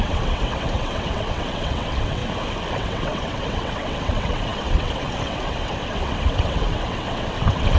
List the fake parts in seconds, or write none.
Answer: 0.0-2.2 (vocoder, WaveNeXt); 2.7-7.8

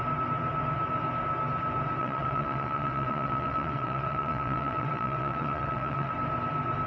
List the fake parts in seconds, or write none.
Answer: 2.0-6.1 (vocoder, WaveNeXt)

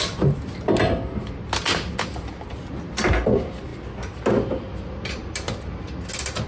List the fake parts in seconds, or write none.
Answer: none

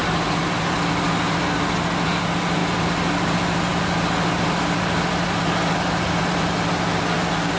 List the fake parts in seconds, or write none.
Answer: none

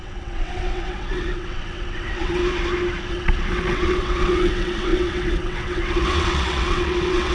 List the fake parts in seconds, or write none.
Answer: 0.0-2.4 (vocoder, WaveNeXt); 3.1-7.3